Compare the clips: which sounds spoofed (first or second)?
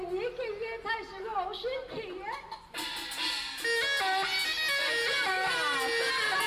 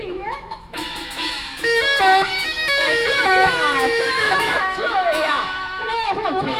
second